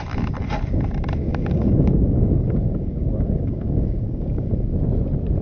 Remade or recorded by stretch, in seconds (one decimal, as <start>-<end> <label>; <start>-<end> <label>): 0.0-1.3 recorded; 1.3-4.5 remade; 4.5-5.4 recorded